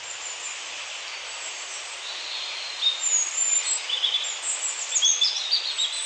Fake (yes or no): no